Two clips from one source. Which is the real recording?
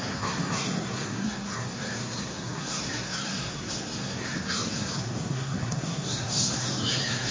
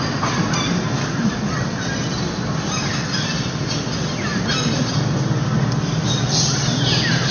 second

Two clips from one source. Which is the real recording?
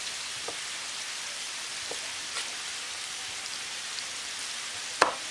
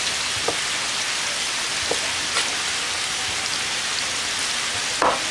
second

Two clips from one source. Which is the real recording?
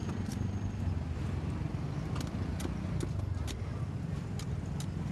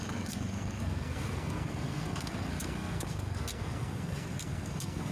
first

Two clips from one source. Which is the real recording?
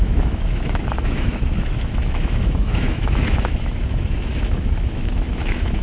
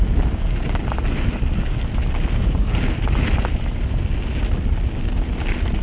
second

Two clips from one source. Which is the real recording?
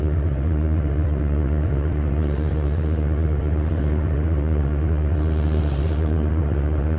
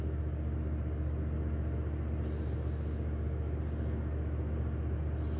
second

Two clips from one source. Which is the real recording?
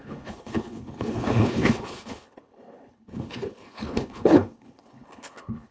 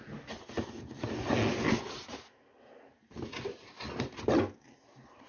second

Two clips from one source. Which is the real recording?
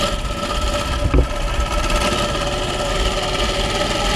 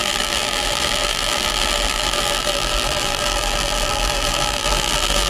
first